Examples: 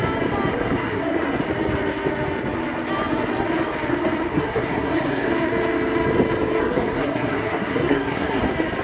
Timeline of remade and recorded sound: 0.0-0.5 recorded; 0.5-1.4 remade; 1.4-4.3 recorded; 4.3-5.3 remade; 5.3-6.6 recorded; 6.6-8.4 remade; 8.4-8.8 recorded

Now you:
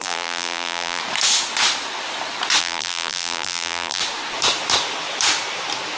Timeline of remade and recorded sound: 0.0-1.0 remade; 1.0-2.6 recorded; 2.6-4.0 remade; 4.0-6.0 recorded

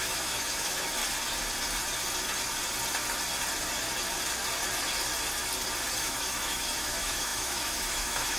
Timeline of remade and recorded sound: 0.0-1.0 remade; 1.0-6.0 recorded; 6.0-8.4 remade

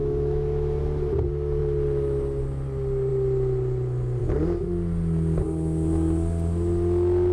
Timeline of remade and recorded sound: 0.0-0.8 remade; 0.8-7.3 recorded